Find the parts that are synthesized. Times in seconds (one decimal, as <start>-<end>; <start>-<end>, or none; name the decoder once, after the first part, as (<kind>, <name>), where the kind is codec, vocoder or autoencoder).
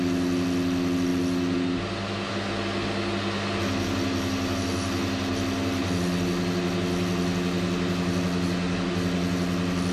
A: none